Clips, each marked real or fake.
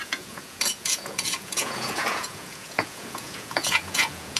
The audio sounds fake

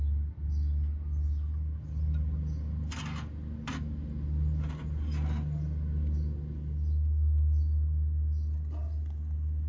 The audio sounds real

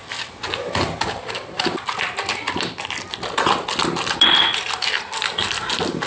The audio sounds real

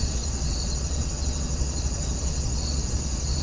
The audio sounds fake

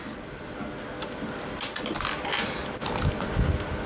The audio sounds real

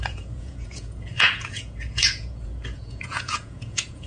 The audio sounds fake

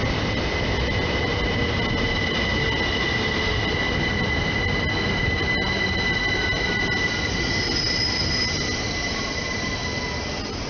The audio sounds real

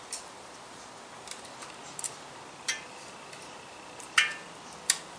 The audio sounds real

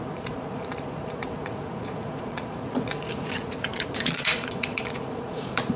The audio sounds fake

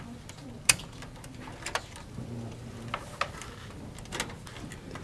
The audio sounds real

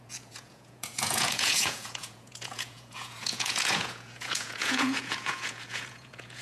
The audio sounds fake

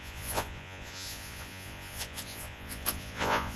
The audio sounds fake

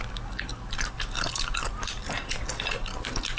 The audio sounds real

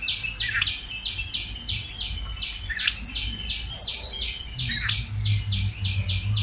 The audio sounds real